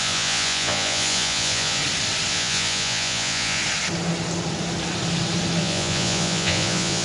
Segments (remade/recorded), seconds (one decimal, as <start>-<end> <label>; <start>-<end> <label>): 0.0-1.8 remade; 1.8-2.3 recorded; 2.3-3.6 remade; 3.6-5.6 recorded; 5.6-7.0 remade